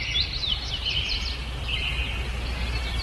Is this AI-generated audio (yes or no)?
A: no